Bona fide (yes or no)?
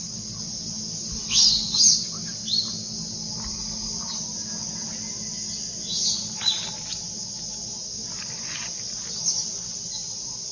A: yes